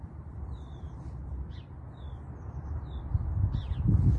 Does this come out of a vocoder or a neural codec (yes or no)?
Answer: no